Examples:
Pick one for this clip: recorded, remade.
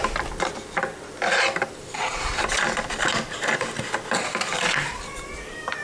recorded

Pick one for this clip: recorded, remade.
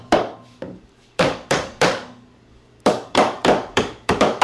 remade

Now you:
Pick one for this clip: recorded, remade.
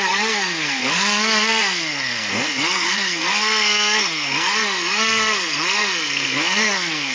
remade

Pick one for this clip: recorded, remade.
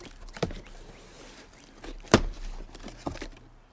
recorded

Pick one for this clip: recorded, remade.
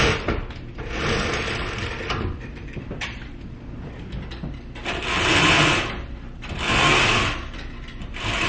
remade